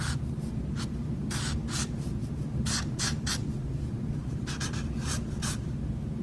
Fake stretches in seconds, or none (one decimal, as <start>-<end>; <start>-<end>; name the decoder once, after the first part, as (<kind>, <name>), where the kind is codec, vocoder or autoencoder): 0.0-6.2 (vocoder, BigVGAN v2)